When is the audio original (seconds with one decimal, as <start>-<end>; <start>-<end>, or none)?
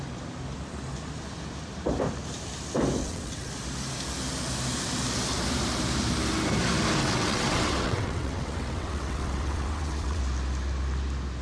0.0-3.0; 3.5-7.0; 10.2-11.4